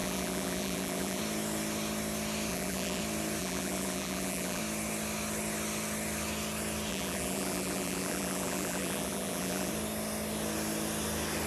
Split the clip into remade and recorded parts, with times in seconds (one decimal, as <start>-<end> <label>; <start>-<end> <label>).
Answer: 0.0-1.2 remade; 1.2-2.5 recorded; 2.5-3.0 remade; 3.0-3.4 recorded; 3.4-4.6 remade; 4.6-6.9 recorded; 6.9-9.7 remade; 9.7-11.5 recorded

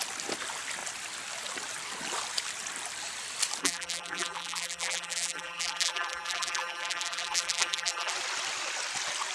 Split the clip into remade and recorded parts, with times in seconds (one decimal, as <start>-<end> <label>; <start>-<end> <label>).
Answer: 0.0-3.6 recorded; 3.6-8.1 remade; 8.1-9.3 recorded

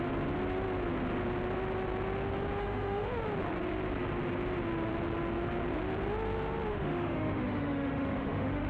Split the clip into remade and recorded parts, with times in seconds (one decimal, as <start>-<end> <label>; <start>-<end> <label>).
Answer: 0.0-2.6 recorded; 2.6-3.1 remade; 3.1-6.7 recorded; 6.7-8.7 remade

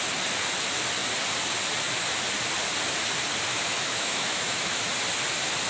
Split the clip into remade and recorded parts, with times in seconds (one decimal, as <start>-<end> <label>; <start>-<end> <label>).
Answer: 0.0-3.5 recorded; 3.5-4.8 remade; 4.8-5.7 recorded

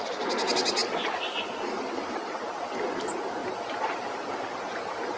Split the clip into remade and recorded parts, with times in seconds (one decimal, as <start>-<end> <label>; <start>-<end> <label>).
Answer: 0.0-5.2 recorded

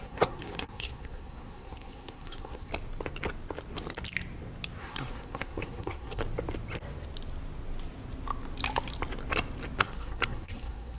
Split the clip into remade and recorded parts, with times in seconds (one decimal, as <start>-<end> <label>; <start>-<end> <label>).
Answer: 0.0-2.7 remade; 2.7-4.8 recorded; 4.8-6.2 remade; 6.2-9.8 recorded; 9.8-11.0 remade